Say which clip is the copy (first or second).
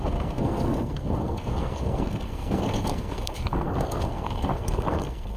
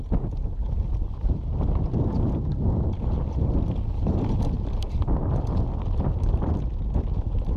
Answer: first